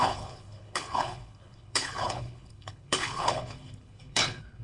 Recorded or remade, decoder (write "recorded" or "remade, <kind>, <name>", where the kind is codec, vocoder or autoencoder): remade, codec, HILCodec